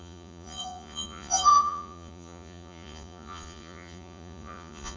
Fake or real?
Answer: fake